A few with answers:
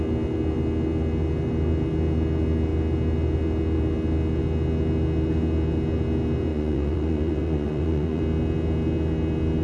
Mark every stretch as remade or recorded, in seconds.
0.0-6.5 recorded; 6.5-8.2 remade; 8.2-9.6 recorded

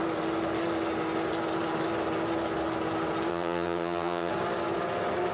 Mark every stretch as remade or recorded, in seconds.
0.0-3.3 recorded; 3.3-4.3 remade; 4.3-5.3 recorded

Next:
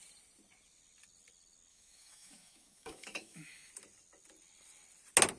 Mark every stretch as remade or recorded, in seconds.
0.0-1.7 recorded; 1.7-3.7 remade; 3.7-5.4 recorded

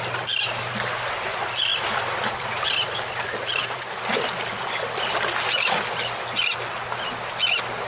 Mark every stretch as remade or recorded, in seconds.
0.0-1.7 recorded; 1.7-6.4 remade; 6.4-7.9 recorded

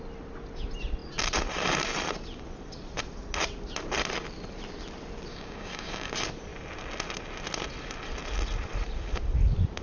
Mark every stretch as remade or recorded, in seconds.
0.0-5.3 recorded; 5.3-6.1 remade; 6.1-9.8 recorded

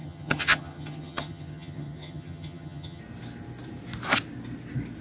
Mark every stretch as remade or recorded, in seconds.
0.0-3.0 remade; 3.0-5.0 recorded

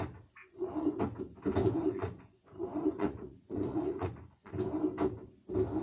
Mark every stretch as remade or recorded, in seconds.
0.0-0.4 recorded; 0.4-1.0 remade; 1.0-1.6 recorded; 1.6-4.5 remade; 4.5-5.8 recorded